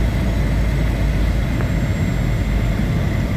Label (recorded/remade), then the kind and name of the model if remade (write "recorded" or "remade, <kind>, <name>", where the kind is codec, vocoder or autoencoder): recorded